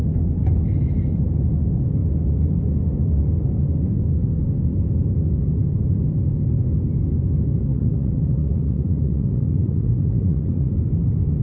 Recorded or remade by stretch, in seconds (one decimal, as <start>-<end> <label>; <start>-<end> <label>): 0.0-7.7 recorded; 7.7-10.7 remade; 10.7-11.4 recorded